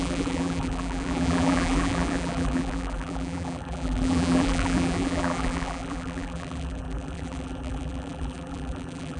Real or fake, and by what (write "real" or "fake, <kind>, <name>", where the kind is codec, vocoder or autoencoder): fake, vocoder, BigVGAN v2